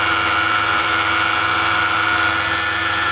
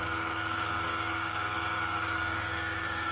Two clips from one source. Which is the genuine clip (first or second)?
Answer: first